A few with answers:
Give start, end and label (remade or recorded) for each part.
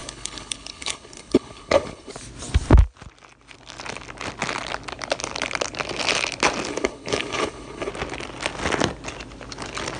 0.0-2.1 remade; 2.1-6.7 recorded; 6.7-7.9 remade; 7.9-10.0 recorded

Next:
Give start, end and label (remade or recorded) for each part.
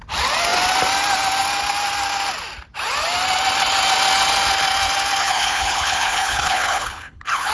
0.0-5.2 recorded; 5.2-7.5 remade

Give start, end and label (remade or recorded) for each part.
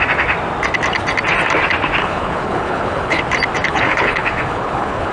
0.0-2.0 recorded; 2.0-3.2 remade; 3.2-3.7 recorded; 3.7-5.1 remade